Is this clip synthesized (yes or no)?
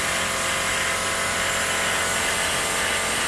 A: no